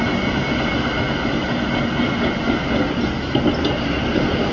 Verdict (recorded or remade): recorded